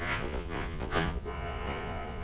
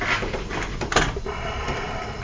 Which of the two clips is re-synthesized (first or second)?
first